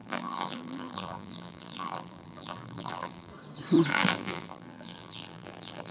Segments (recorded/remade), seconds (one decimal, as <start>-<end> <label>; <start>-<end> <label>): 0.0-3.3 remade; 3.3-3.9 recorded; 3.9-5.9 remade